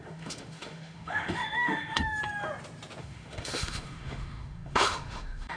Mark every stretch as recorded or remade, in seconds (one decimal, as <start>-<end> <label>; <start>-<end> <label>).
0.0-2.2 remade; 2.2-3.0 recorded; 3.0-5.6 remade

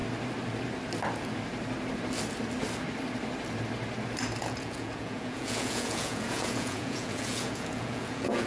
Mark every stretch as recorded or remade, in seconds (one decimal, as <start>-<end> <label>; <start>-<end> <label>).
0.0-4.4 recorded; 4.4-8.5 remade

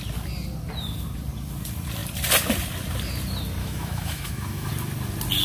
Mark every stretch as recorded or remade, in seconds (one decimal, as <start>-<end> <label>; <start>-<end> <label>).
0.0-3.6 recorded; 3.6-4.7 remade; 4.7-5.4 recorded

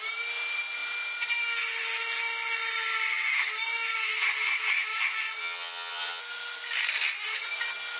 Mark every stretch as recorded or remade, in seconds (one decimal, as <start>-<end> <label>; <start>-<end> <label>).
0.0-5.4 recorded; 5.4-6.2 remade; 6.2-8.0 recorded

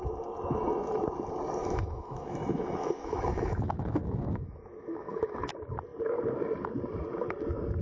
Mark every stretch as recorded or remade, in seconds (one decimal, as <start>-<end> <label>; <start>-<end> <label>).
0.0-1.6 recorded; 1.6-5.5 remade; 5.5-7.8 recorded